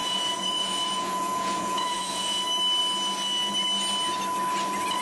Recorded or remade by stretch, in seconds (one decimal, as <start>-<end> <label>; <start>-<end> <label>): 0.0-2.4 remade; 2.4-5.0 recorded